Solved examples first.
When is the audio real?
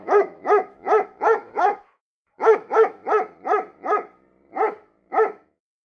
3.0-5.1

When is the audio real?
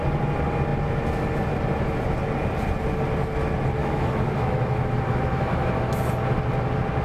0.0-3.8; 6.0-7.0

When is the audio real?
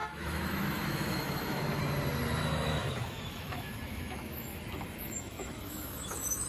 1.8-2.4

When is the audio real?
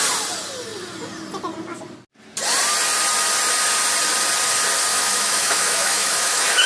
0.0-4.9